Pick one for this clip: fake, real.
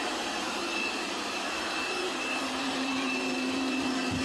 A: fake